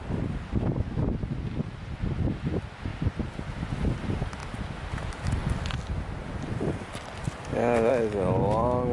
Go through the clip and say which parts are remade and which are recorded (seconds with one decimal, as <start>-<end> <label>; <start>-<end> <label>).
0.0-2.9 recorded; 2.9-3.7 remade; 3.7-8.9 recorded